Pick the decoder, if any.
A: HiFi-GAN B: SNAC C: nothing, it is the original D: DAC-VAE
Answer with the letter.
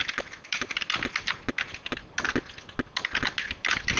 C